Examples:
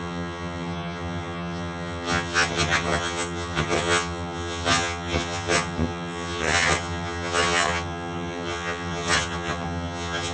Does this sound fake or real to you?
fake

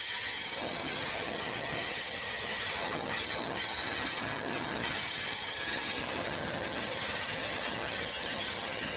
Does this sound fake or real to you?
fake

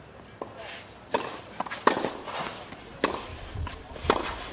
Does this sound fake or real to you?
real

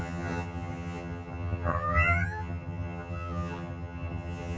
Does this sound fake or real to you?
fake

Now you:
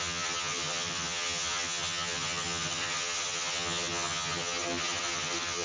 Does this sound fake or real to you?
fake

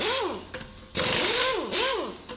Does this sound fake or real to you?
real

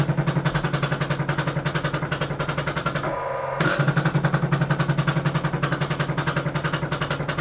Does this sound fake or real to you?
real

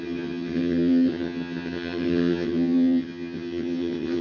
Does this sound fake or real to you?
fake